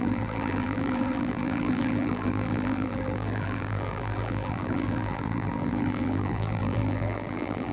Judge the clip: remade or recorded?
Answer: remade